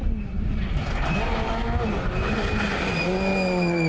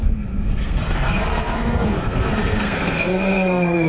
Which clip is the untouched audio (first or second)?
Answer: first